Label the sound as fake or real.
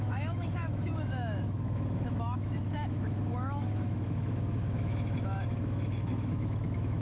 fake